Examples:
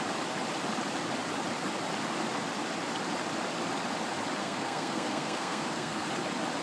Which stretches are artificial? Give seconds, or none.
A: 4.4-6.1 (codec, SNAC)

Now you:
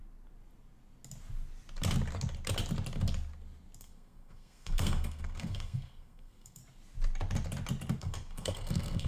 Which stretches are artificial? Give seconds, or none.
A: 3.8-6.6 (codec, SNAC); 8.0-9.1

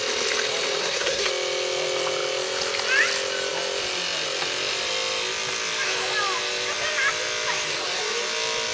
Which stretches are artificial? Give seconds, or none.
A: 0.8-1.3 (codec, SNAC)

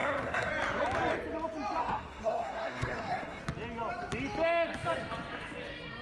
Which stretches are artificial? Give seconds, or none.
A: 0.0-0.5 (codec, SNAC); 1.8-3.4

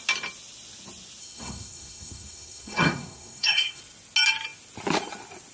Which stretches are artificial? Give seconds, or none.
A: 1.2-3.8 (codec, SNAC)